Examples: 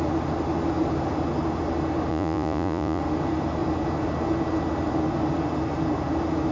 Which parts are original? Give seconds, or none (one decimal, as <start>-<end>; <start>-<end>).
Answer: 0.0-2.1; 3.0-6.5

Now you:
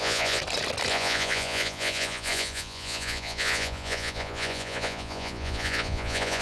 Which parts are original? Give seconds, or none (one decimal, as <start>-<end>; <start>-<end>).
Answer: 0.4-0.9

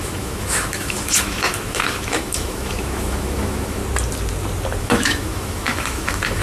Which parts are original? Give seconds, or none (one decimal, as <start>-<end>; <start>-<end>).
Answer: 3.8-4.8

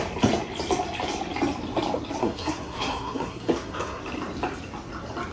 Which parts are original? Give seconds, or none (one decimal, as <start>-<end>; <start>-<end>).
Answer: 0.0-2.2; 4.0-5.3